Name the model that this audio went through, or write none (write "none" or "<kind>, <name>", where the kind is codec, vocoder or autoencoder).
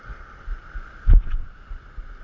none